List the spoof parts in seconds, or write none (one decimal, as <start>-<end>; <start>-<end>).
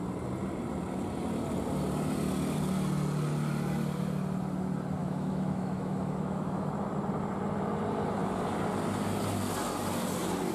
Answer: 5.0-6.7